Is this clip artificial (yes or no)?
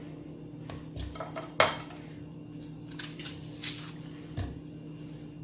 no